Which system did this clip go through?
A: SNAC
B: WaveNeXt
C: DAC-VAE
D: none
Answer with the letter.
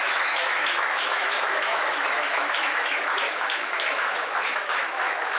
C